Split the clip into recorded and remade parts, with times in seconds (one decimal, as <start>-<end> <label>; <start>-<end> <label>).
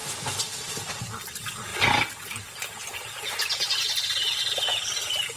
0.0-5.4 recorded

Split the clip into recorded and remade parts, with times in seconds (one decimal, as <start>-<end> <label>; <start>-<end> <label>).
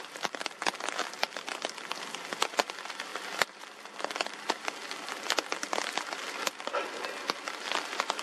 0.0-3.1 recorded; 3.1-4.5 remade; 4.5-8.2 recorded